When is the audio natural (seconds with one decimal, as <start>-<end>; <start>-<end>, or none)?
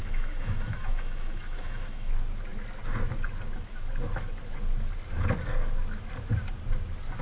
2.1-7.2